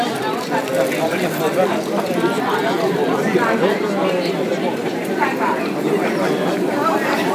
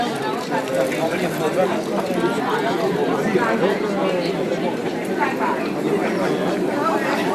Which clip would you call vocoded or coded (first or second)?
first